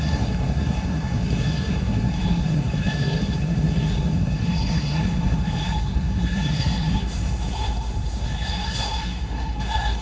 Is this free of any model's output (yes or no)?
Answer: no